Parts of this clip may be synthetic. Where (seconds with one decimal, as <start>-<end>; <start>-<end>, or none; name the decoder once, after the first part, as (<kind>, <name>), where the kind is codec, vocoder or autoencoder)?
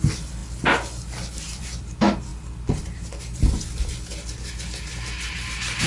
none